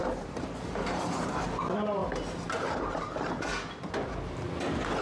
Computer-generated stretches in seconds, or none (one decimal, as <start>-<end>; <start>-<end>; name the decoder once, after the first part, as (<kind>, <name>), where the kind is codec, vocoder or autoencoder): 0.0-1.4 (vocoder, BigVGAN v2); 2.0-3.5